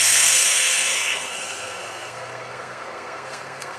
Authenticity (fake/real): fake